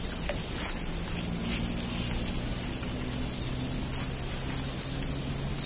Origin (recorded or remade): recorded